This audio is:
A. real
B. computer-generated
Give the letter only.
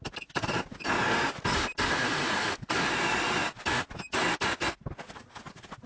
A